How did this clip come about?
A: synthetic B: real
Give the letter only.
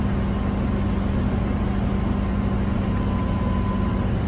B